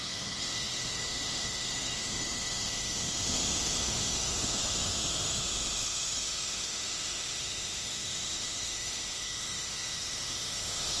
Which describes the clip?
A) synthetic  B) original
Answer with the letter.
A